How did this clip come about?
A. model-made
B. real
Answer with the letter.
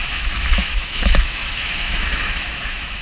A